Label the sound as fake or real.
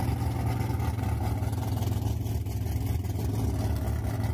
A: real